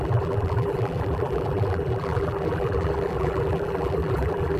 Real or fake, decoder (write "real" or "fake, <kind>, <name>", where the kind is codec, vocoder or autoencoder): fake, vocoder, BigVGAN v2